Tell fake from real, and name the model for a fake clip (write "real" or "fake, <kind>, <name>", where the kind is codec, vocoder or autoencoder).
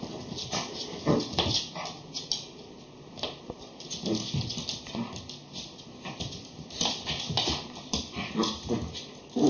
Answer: real